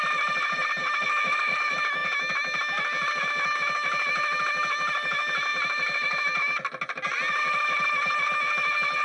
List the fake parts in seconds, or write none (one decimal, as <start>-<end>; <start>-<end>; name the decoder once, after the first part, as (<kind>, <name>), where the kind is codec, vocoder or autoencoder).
5.5-6.4 (vocoder, BigVGAN v2)